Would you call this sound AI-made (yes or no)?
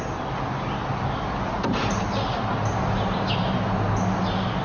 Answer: no